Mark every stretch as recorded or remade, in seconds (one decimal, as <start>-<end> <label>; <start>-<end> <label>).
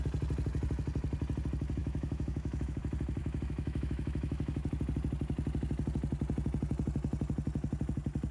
0.0-1.8 recorded; 1.8-2.8 remade; 2.8-3.2 recorded; 3.2-4.7 remade; 4.7-8.3 recorded